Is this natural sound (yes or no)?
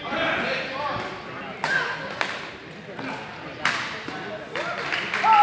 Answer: yes